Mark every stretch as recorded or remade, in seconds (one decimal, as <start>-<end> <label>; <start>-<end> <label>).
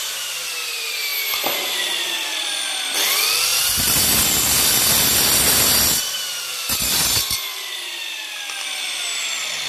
0.0-3.5 recorded; 3.5-4.4 remade; 4.4-6.5 recorded; 6.5-7.0 remade; 7.0-9.7 recorded